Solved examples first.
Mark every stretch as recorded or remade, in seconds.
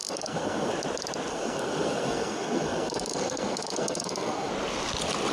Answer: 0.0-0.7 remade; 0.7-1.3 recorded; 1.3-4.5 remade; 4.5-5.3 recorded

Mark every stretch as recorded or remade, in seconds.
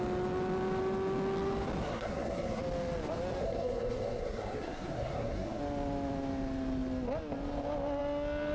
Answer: 0.0-1.8 recorded; 1.8-2.6 remade; 2.6-3.4 recorded; 3.4-5.6 remade; 5.6-8.5 recorded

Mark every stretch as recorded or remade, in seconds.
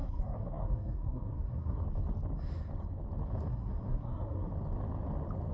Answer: 0.0-1.8 remade; 1.8-3.5 recorded; 3.5-4.5 remade; 4.5-5.5 recorded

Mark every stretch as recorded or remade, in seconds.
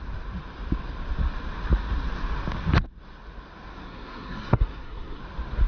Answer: 0.0-3.7 recorded; 3.7-5.2 remade; 5.2-5.7 recorded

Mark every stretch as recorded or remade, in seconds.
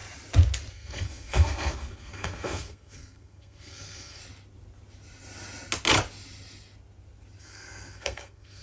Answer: 0.0-0.7 recorded; 0.7-4.2 remade; 4.2-7.4 recorded; 7.4-8.6 remade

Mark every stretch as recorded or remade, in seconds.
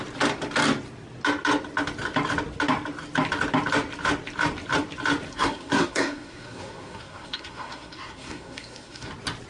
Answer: 0.0-5.3 recorded; 5.3-9.1 remade; 9.1-9.5 recorded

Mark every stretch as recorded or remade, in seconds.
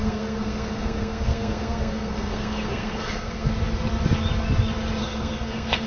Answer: 0.0-3.5 remade; 3.5-5.0 recorded; 5.0-5.9 remade